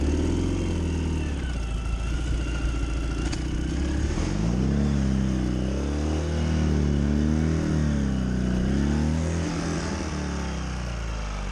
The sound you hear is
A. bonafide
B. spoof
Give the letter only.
A